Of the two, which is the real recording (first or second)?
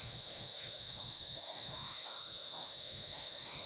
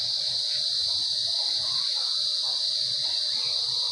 second